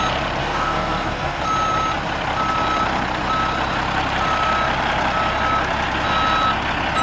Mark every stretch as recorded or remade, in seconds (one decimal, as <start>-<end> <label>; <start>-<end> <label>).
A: 0.0-0.4 recorded; 0.4-1.4 remade; 1.4-7.0 recorded